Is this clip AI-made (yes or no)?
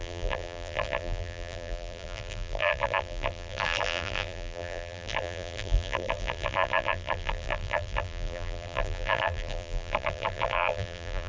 yes